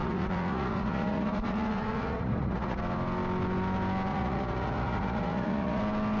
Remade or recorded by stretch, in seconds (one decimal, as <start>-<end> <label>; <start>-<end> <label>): 0.0-2.8 remade; 2.8-4.1 recorded; 4.1-5.8 remade; 5.8-6.2 recorded